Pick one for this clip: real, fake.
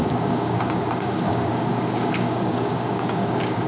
fake